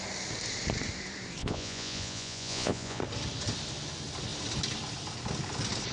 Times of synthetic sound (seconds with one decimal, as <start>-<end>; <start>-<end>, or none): 1.4-3.0